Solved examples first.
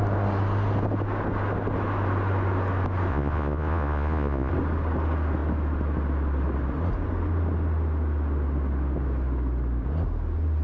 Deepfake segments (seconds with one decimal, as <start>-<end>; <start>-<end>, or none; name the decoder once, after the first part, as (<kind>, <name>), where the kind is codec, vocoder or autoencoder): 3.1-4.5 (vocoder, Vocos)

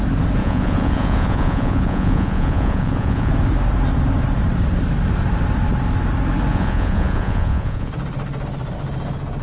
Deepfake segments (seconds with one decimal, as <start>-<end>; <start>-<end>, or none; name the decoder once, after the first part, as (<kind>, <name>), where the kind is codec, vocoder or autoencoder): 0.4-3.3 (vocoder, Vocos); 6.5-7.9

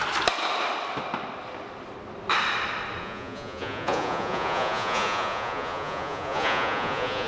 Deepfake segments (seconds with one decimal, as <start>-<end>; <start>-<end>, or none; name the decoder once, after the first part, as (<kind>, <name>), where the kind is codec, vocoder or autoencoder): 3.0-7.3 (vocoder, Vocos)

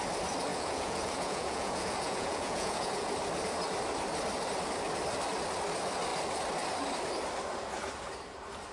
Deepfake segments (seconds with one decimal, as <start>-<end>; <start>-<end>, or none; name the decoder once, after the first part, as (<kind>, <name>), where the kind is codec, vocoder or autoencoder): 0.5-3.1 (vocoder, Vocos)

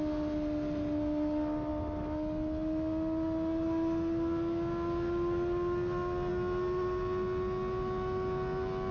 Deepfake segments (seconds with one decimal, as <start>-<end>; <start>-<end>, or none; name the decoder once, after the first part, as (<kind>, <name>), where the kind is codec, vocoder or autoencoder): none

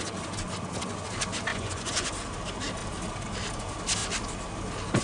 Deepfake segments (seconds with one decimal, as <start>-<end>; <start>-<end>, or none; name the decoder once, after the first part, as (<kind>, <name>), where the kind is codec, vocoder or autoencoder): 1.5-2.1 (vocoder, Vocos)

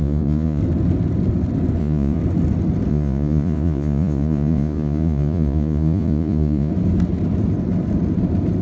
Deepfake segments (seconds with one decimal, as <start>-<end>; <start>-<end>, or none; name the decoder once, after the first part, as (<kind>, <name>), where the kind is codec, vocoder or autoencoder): 0.0-0.6 (vocoder, Vocos); 1.8-2.2; 2.9-6.7

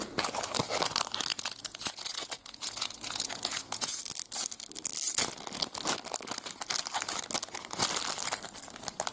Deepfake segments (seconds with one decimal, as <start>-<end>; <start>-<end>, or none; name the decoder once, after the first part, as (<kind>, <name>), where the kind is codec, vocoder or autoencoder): 1.3-4.0 (vocoder, Vocos)